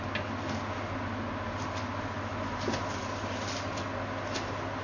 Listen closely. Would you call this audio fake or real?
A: real